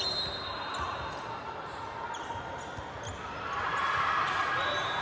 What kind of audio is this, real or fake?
real